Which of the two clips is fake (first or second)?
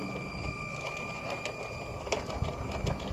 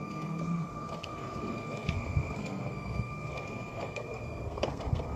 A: second